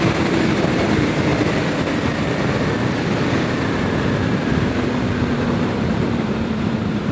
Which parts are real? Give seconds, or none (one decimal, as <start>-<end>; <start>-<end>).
1.3-5.6